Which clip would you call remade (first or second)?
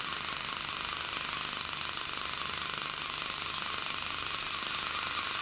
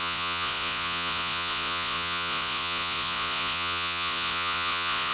second